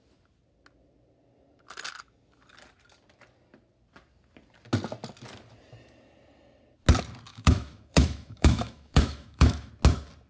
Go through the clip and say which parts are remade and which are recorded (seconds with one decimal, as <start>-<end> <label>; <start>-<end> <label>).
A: 0.0-7.3 recorded; 7.3-9.7 remade; 9.7-10.3 recorded

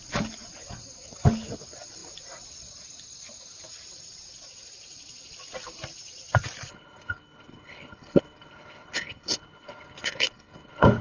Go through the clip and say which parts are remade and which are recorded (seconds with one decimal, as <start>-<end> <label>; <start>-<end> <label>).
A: 0.0-6.7 recorded; 6.7-11.0 remade

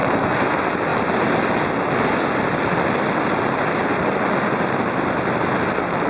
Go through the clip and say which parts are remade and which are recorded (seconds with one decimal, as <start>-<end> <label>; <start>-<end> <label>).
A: 0.0-0.5 remade; 0.5-6.1 recorded

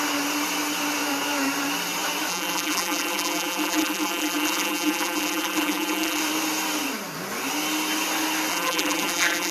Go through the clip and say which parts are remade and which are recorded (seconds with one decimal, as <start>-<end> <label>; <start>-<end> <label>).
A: 0.0-2.3 recorded; 2.3-6.2 remade; 6.2-8.5 recorded; 8.5-9.5 remade

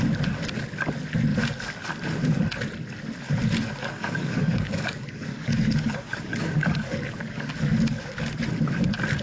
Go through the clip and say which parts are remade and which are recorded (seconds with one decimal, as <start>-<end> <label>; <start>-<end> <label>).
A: 0.0-3.8 recorded; 3.8-7.5 remade; 7.5-9.2 recorded

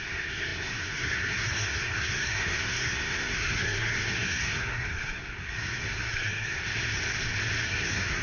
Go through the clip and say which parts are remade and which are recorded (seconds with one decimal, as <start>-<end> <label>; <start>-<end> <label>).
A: 0.0-6.6 remade; 6.6-7.6 recorded; 7.6-8.2 remade